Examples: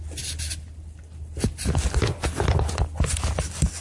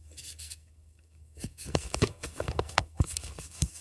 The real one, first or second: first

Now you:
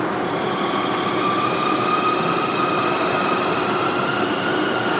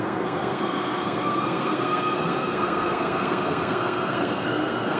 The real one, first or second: first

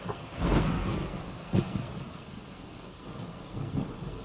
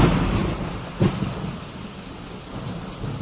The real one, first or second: second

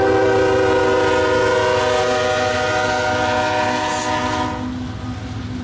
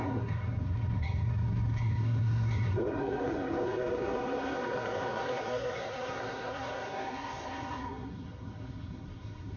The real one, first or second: first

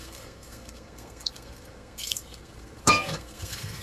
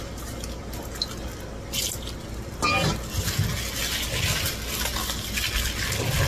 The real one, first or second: second